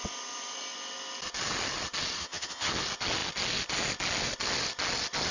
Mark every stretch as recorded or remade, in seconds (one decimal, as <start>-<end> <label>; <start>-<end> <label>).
0.0-2.2 recorded; 2.2-2.7 remade; 2.7-5.3 recorded